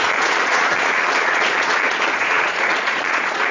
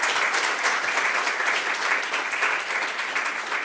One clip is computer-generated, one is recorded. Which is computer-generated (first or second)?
first